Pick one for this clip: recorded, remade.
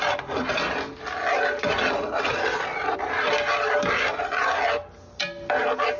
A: recorded